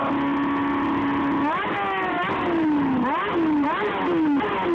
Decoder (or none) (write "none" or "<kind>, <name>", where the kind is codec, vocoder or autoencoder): none